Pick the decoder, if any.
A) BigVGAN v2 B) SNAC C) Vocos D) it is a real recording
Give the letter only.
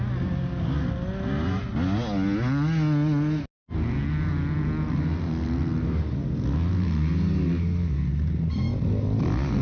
D